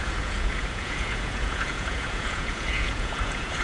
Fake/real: fake